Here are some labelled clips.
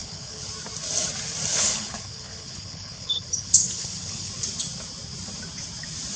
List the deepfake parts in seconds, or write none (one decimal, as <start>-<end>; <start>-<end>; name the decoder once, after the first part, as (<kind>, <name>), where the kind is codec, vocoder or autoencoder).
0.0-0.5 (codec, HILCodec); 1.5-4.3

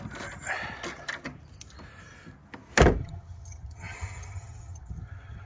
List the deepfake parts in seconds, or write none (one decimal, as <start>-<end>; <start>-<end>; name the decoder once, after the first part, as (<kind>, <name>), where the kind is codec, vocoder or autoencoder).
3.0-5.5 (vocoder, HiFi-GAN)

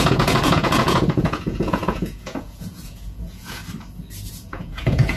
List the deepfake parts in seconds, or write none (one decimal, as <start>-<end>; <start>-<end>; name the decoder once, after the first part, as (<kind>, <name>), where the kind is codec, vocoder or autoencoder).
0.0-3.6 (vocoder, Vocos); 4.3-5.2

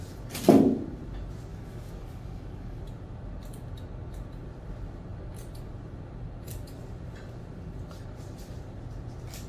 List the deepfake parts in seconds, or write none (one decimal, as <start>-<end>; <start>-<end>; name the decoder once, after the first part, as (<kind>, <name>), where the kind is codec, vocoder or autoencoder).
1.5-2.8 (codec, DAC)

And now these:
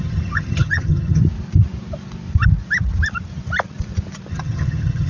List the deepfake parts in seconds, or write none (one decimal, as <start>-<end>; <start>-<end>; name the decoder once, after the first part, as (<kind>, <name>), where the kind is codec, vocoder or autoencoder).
0.0-1.2 (vocoder, HiFi-GAN); 4.3-5.1